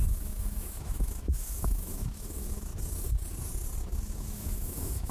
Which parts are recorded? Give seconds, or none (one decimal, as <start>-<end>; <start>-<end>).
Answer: 2.7-4.0